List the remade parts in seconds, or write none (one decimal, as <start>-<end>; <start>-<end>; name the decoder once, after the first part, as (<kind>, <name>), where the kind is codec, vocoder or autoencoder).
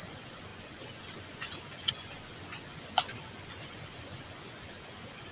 0.0-5.3 (vocoder, Vocos)